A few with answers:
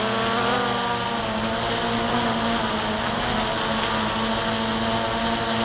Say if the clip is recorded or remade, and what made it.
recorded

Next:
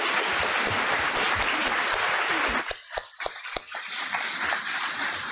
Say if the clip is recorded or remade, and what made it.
recorded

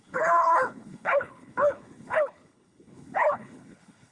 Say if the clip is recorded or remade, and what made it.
remade, codec, HILCodec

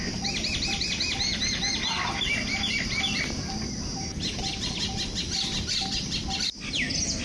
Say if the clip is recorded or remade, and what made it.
recorded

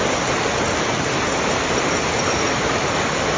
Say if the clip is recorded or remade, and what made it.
recorded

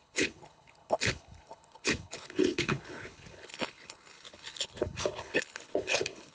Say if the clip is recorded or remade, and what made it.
remade, codec, HILCodec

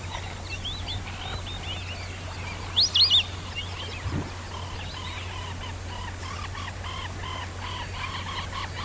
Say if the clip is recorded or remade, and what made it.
recorded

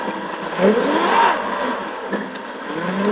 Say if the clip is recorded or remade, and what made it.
recorded